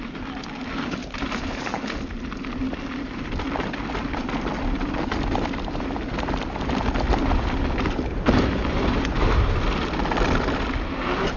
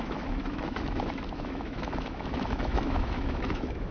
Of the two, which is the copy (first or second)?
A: second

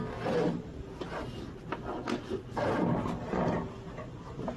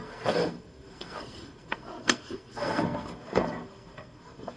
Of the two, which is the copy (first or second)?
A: second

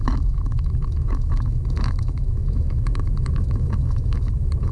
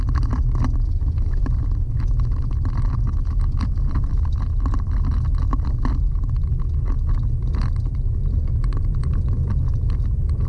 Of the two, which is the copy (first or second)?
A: first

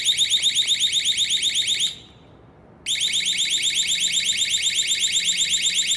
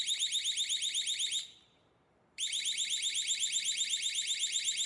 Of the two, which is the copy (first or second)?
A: second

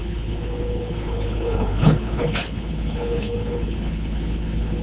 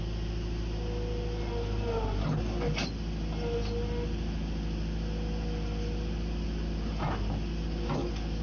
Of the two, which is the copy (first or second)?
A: first